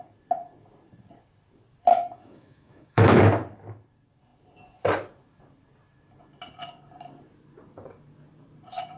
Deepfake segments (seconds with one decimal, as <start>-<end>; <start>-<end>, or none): 1.9-3.2